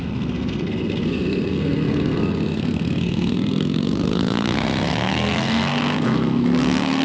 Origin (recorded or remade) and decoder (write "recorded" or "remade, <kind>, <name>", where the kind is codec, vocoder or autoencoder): remade, codec, SNAC